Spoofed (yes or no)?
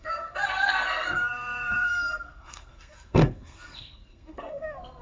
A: yes